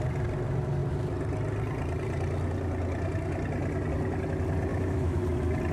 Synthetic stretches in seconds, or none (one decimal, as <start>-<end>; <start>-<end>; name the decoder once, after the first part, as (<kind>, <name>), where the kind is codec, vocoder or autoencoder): 4.7-5.2 (autoencoder, DAC-VAE)